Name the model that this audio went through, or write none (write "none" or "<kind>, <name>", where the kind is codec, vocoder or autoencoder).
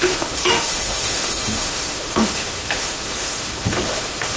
autoencoder, DAC-VAE